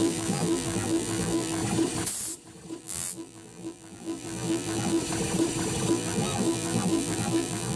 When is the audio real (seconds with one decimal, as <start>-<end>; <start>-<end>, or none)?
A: 1.6-2.8; 5.0-5.9